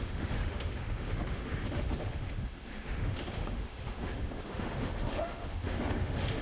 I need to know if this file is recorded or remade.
remade